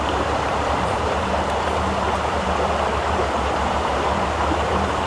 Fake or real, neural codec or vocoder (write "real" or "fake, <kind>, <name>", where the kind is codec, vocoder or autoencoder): fake, vocoder, BigVGAN v2